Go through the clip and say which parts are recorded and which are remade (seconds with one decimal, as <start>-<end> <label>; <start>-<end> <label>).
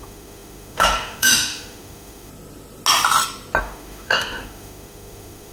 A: 0.0-2.3 remade; 2.3-3.6 recorded; 3.6-5.5 remade